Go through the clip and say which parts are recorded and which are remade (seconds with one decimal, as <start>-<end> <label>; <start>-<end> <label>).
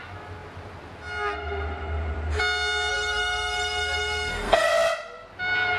0.0-2.9 recorded; 2.9-4.7 remade; 4.7-5.8 recorded